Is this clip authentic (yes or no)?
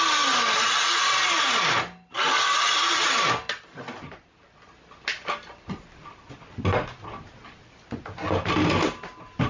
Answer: yes